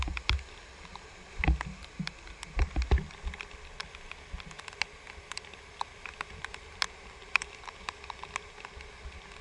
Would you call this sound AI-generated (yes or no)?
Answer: no